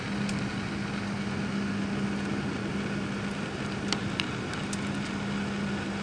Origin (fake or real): real